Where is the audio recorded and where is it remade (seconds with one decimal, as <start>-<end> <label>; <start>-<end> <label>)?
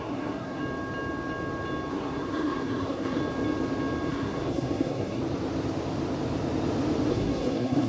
0.0-0.6 remade; 0.6-1.9 recorded; 1.9-3.2 remade; 3.2-4.1 recorded; 4.1-5.2 remade; 5.2-7.1 recorded; 7.1-7.9 remade